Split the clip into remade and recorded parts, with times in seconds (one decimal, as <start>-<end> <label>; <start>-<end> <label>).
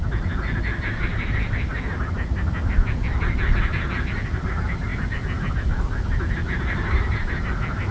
0.0-7.9 recorded